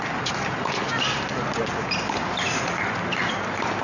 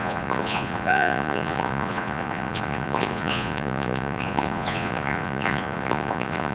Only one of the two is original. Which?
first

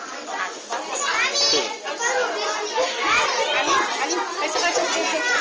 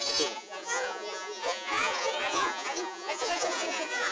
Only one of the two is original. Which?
first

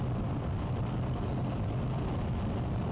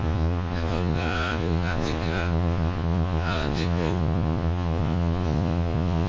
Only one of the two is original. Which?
first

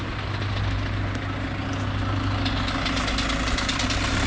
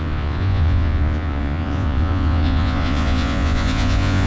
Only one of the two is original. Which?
first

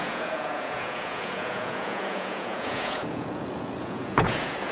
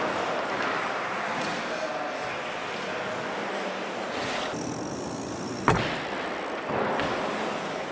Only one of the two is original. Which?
second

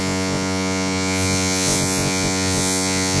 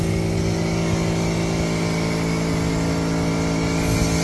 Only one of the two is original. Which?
second